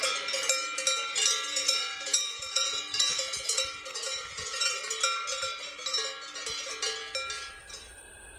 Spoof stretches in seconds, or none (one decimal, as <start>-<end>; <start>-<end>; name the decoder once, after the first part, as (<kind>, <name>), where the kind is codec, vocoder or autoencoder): 1.6-4.8 (vocoder, Vocos)